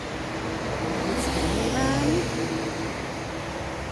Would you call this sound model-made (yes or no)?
no